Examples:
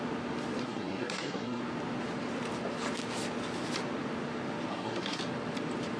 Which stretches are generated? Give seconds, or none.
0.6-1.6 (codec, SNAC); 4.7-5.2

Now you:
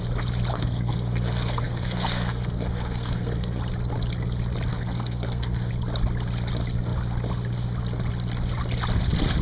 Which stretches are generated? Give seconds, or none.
0.5-3.6 (codec, SNAC); 4.7-5.7

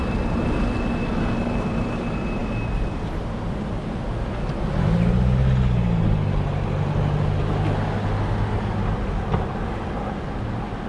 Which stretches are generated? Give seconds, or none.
none

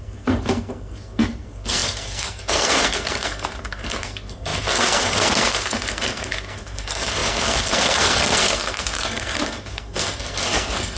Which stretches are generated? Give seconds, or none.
0.0-11.0 (codec, SNAC)

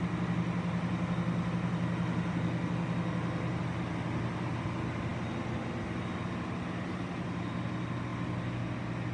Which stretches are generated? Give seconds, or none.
none

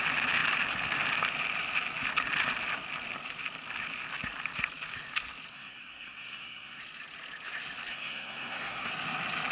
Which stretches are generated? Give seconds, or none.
5.5-6.8 (codec, SNAC); 7.9-8.9